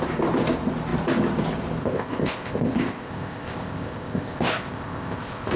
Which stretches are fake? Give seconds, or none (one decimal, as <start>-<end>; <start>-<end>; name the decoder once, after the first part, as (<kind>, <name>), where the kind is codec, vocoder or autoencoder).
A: 1.8-5.6 (codec, ZipCodec)